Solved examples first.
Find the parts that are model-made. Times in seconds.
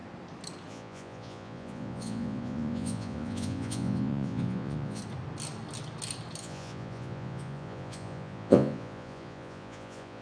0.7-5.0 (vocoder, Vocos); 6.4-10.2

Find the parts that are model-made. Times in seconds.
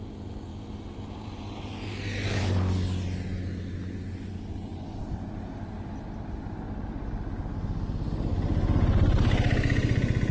none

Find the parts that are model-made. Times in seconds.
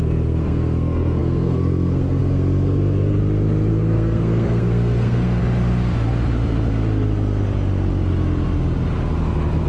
0.0-3.2 (codec, SNAC); 3.7-5.4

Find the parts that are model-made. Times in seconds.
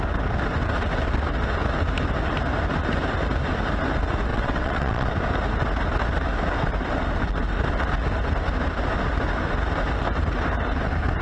4.3-5.1 (vocoder, WaveNeXt)